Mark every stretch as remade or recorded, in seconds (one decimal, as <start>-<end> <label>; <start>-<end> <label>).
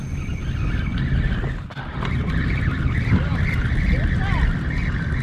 0.0-5.2 recorded